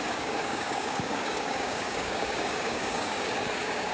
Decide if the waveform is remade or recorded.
remade